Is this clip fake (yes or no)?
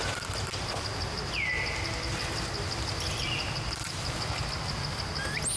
no